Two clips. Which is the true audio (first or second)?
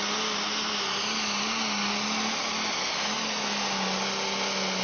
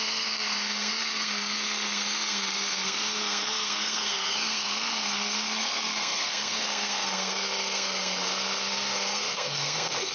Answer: first